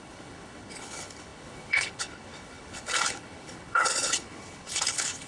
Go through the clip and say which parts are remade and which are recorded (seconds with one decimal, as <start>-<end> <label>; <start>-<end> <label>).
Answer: 0.0-5.3 remade